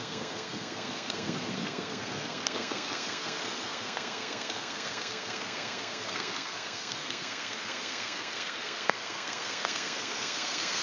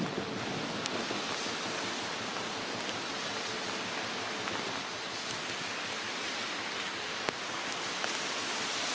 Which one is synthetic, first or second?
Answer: first